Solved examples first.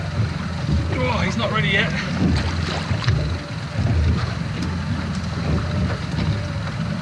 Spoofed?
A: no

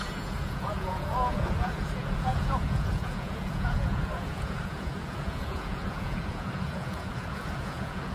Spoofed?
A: yes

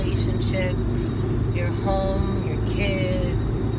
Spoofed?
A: no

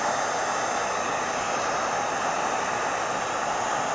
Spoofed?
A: no